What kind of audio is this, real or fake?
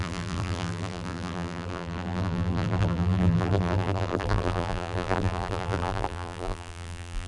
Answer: fake